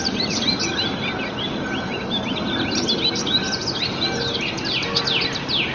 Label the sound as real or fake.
real